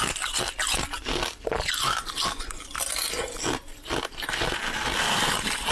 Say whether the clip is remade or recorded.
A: recorded